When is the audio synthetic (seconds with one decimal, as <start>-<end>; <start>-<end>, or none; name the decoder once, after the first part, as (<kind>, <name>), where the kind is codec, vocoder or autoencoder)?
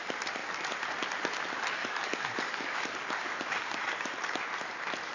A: 1.8-4.4 (codec, DAC)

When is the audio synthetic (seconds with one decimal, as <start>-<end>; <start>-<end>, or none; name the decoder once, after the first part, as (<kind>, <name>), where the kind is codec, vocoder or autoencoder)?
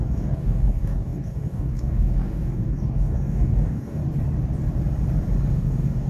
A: 0.0-4.0 (codec, DAC); 5.5-6.1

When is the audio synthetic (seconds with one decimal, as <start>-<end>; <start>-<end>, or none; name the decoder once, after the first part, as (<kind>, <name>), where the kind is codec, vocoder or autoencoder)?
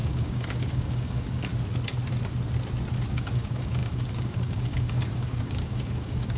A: 0.0-1.5 (codec, DAC); 3.1-6.4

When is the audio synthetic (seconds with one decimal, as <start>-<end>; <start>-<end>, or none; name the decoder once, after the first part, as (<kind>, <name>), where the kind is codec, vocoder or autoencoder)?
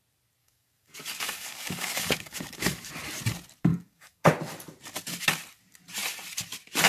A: 0.4-2.9 (codec, DAC); 3.7-4.3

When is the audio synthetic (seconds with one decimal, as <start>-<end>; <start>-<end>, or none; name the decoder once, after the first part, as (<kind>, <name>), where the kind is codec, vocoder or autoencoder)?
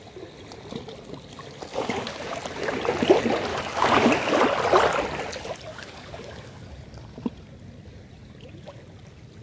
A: 1.7-2.3 (codec, DAC); 3.5-4.4; 5.7-6.6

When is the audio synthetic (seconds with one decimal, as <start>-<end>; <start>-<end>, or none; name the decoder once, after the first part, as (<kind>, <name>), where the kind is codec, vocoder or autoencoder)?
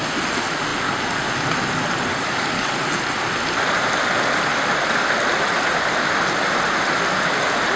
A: 2.1-2.7 (codec, DAC)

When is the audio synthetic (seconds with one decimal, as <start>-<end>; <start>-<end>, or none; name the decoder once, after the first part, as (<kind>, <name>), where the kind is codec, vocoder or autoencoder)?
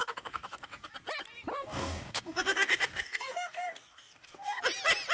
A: 0.0-0.9 (codec, DAC); 1.5-4.6